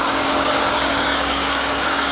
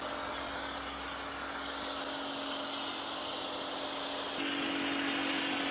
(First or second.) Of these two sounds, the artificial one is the first